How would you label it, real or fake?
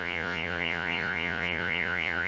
fake